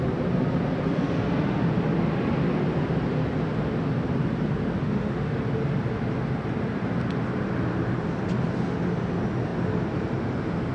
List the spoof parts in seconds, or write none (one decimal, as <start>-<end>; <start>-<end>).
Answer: 4.8-5.4